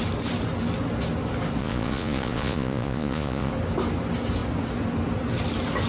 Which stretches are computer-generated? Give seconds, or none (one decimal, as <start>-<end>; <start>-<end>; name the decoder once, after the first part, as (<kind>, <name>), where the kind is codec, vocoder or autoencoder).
1.6-3.5 (vocoder, Vocos)